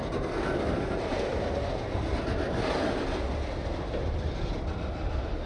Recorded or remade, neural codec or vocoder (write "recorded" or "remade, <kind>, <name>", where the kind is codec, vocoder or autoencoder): recorded